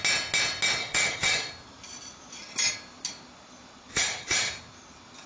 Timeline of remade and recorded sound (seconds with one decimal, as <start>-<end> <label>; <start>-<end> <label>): 0.0-0.8 recorded; 0.8-1.5 remade; 1.5-3.9 recorded; 3.9-4.5 remade; 4.5-5.3 recorded